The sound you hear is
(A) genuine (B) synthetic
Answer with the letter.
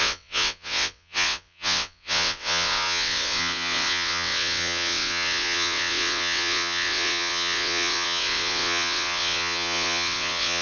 B